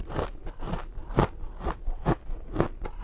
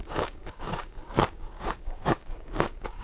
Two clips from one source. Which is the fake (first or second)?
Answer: second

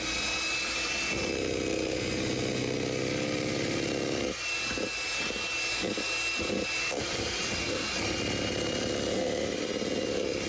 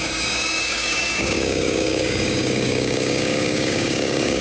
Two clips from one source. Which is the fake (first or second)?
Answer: second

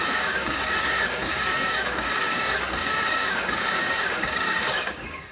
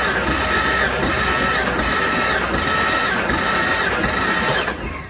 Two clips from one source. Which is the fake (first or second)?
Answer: first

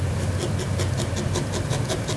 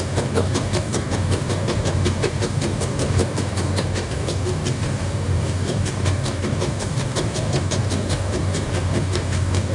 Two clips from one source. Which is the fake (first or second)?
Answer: second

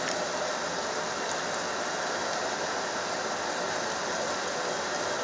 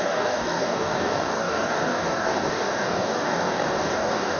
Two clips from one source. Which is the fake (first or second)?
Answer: second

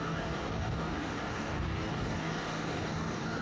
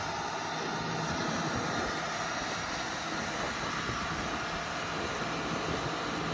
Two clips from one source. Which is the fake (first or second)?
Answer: first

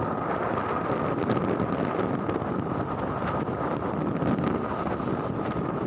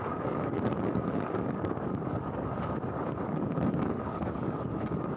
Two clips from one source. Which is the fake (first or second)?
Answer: second